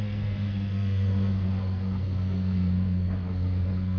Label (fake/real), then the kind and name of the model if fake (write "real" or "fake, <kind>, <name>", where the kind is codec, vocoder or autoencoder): fake, codec, SNAC